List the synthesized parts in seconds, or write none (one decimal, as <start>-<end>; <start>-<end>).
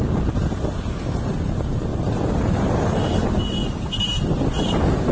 none